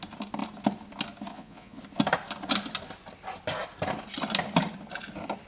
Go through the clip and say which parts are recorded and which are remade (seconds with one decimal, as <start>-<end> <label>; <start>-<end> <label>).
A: 0.0-1.3 recorded; 1.3-1.8 remade; 1.8-5.5 recorded